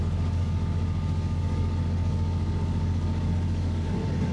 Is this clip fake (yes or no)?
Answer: yes